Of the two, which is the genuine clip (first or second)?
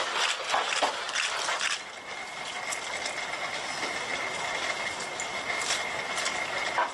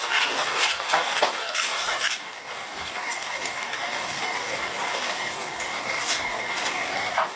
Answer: first